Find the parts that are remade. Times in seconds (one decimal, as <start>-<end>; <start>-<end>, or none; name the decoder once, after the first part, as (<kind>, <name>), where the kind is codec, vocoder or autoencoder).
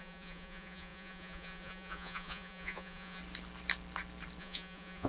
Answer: 0.0-3.2 (vocoder, Vocos); 4.4-5.1